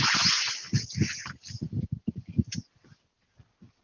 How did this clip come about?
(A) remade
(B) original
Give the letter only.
B